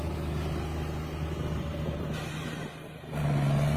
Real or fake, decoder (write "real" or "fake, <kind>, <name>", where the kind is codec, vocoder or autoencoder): real